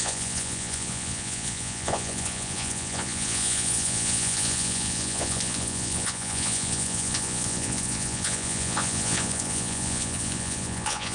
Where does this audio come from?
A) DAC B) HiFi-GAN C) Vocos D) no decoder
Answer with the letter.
C